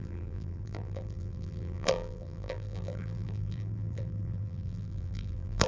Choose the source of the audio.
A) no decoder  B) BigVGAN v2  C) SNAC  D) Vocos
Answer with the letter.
B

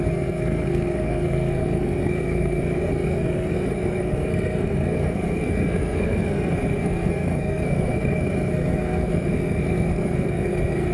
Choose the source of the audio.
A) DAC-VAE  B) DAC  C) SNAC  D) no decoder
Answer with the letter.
C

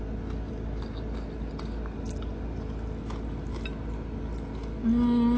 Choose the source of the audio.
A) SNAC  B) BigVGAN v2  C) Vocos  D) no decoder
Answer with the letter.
D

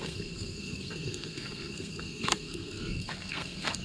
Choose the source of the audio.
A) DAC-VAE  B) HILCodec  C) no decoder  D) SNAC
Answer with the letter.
D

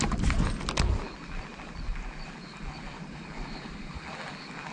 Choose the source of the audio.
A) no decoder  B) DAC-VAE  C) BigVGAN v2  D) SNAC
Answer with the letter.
A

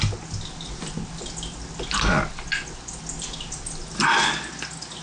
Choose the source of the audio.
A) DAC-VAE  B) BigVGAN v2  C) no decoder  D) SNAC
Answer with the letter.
C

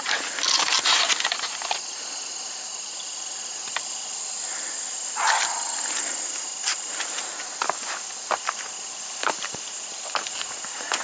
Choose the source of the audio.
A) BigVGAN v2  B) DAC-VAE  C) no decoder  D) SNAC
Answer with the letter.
C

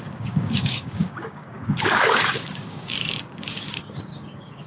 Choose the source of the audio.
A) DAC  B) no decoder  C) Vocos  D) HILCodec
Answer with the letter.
A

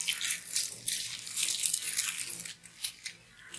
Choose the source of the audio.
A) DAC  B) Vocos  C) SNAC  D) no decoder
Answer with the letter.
D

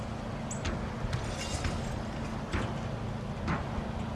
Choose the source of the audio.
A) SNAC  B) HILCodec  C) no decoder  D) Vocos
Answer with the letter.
C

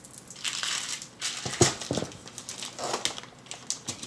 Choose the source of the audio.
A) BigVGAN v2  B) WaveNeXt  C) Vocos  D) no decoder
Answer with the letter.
D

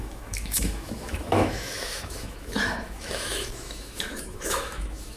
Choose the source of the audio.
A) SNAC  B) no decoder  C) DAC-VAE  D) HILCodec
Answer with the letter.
C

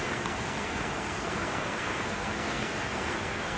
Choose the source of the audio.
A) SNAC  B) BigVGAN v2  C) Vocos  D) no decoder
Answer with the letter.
A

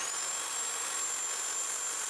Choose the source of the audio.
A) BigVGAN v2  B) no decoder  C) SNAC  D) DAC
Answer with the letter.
B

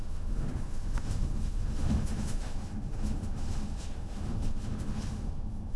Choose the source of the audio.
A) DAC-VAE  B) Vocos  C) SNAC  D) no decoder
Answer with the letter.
A